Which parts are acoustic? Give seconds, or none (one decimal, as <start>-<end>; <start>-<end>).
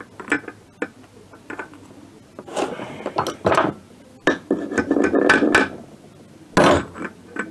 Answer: 0.0-7.5